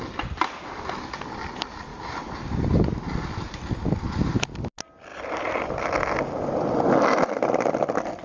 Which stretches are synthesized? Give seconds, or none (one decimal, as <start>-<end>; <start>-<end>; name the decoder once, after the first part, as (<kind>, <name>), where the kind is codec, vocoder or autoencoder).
1.9-2.6 (vocoder, BigVGAN v2); 5.1-5.7